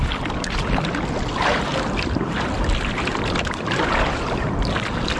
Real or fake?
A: real